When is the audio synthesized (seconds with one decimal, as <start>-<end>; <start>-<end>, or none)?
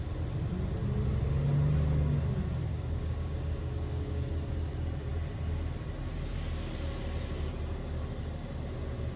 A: 2.7-4.3